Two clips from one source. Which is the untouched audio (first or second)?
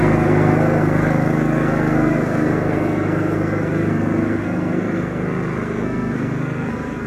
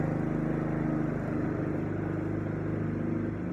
second